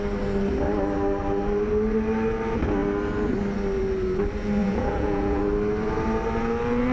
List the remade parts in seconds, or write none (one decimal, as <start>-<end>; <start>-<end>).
4.6-5.4